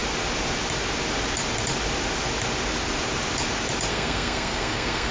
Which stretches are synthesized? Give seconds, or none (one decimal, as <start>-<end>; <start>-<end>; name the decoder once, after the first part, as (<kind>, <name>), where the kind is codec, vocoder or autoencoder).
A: 3.9-5.1 (codec, SNAC)